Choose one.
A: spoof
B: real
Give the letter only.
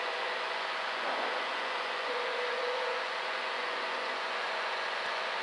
A